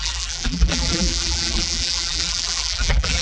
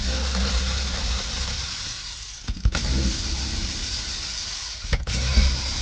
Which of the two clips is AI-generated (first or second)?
first